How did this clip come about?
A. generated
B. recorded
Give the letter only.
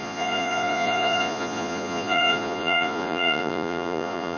A